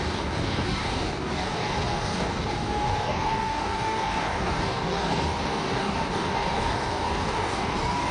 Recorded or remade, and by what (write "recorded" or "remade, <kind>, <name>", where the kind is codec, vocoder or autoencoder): remade, codec, DAC